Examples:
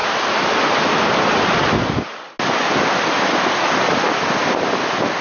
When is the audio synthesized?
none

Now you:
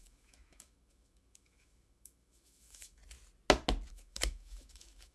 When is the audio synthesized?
0.0-3.0 (autoencoder, DAC-VAE); 3.9-5.1

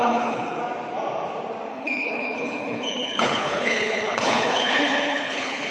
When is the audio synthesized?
0.0-0.6 (codec, HILCodec); 1.7-5.7

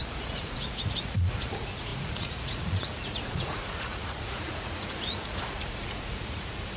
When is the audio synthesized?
0.0-6.8 (vocoder, Vocos)

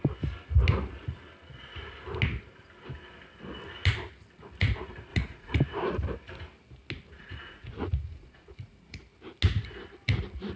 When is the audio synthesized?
5.1-5.6 (vocoder, Vocos); 7.1-9.0